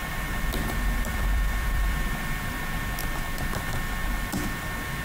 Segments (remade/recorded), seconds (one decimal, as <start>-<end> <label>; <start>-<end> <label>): 0.0-2.6 remade; 2.6-3.0 recorded; 3.0-3.6 remade; 3.6-4.0 recorded; 4.0-4.6 remade; 4.6-5.0 recorded

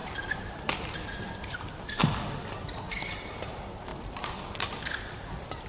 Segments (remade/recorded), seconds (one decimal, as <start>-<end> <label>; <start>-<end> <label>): 0.0-2.0 remade; 2.0-3.9 recorded; 3.9-4.9 remade; 4.9-5.7 recorded

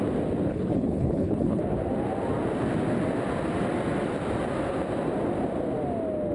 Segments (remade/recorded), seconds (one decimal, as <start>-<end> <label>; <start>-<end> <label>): 0.0-0.5 recorded; 0.5-1.6 remade; 1.6-6.3 recorded

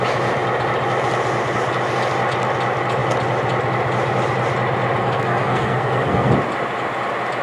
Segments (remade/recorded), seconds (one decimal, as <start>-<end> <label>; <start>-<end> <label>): 0.0-5.0 recorded; 5.0-6.3 remade; 6.3-7.4 recorded

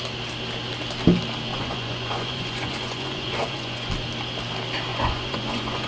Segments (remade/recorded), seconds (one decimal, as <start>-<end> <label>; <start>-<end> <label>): 0.0-1.5 recorded; 1.5-3.9 remade; 3.9-4.9 recorded; 4.9-5.9 remade

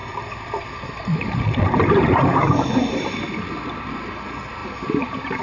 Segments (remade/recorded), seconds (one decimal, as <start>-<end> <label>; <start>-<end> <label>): 0.0-3.2 remade; 3.2-4.6 recorded; 4.6-5.4 remade